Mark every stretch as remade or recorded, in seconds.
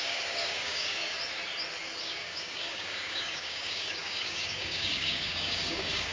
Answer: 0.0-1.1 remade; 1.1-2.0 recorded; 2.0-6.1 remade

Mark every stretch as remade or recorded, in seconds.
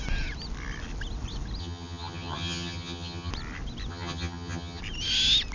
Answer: 0.0-1.6 recorded; 1.6-3.3 remade; 3.3-3.9 recorded; 3.9-4.8 remade; 4.8-5.5 recorded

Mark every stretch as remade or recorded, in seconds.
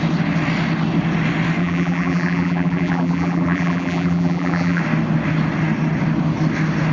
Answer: 0.0-1.6 recorded; 1.6-4.8 remade; 4.8-6.9 recorded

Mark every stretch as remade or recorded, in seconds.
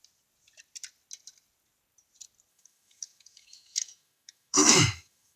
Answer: 0.0-2.5 recorded; 2.5-5.4 remade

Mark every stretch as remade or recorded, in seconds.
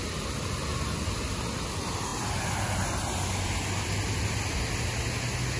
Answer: 0.0-5.6 recorded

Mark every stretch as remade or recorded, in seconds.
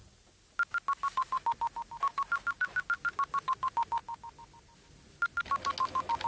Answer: 0.0-6.3 recorded